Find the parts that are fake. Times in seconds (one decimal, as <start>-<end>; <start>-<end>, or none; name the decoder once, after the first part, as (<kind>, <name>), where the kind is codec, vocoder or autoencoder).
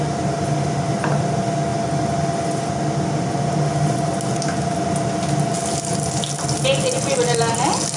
none